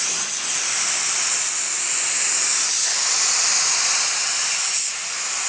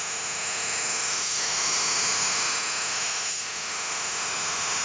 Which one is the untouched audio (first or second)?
first